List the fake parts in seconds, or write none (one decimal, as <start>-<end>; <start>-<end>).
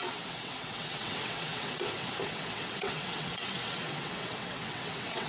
0.0-5.3